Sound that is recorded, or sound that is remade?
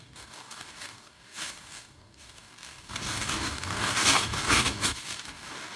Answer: remade